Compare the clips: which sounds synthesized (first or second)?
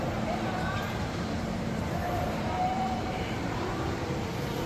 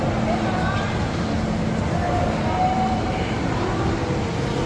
first